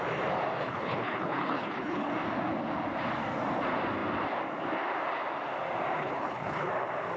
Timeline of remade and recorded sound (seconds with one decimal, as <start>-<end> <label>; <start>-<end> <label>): 0.0-0.6 recorded; 0.6-2.1 remade; 2.1-6.0 recorded; 6.0-6.7 remade; 6.7-7.2 recorded